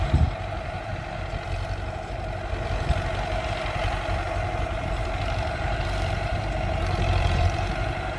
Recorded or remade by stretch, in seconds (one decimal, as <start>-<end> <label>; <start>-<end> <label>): 0.0-0.9 remade; 0.9-5.2 recorded; 5.2-8.2 remade